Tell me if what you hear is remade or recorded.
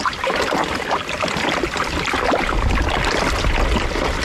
recorded